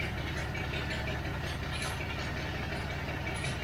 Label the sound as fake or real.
real